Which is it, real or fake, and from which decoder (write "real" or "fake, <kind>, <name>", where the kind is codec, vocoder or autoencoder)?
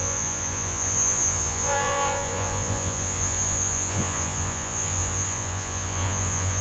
fake, vocoder, Vocos